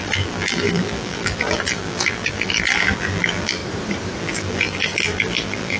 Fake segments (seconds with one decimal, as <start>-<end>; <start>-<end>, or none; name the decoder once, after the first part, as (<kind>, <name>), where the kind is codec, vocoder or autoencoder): 0.0-3.6 (vocoder, BigVGAN v2); 4.2-5.8